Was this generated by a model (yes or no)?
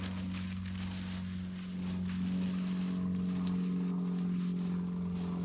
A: no